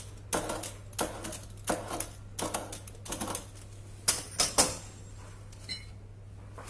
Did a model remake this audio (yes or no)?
no